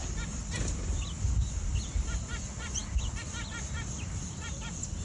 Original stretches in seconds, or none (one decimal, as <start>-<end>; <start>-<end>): 0.0-5.0